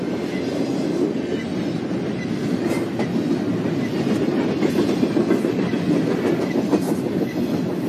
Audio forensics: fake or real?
real